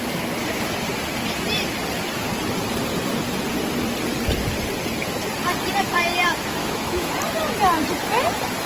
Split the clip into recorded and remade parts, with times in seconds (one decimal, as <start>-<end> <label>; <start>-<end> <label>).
0.0-6.6 recorded; 6.6-7.1 remade; 7.1-8.7 recorded